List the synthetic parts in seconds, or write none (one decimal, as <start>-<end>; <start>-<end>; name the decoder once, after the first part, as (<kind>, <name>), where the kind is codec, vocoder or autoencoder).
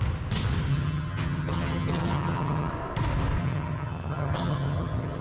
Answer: 0.7-2.7 (vocoder, HiFi-GAN); 3.4-5.2